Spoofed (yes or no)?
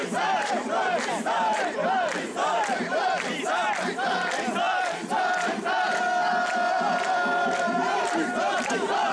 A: yes